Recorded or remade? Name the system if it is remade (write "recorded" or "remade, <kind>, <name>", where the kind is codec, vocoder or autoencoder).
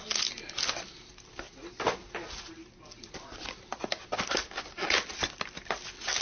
recorded